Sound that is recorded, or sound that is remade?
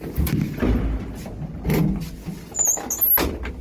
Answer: recorded